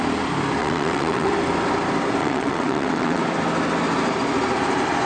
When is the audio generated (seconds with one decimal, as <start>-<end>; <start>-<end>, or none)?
0.6-1.3; 2.2-3.2